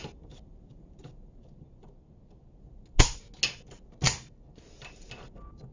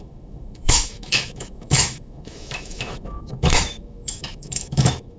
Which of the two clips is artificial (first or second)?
second